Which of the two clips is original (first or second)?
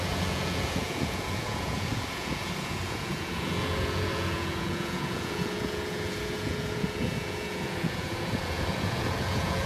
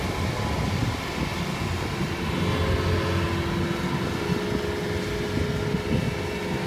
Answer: second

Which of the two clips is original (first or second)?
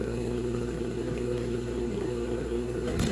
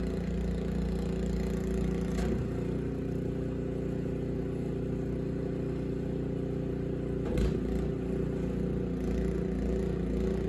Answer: second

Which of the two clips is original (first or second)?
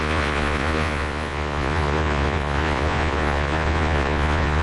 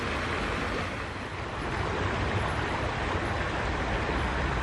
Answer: second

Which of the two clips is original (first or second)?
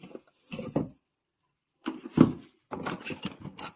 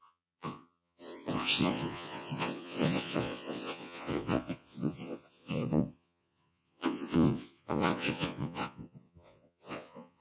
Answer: first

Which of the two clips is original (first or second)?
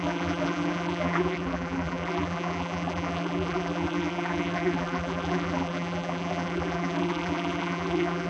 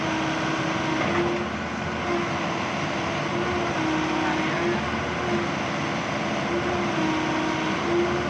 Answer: second